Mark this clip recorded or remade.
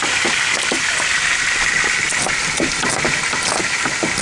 recorded